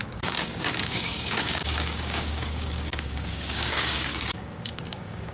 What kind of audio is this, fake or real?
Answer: fake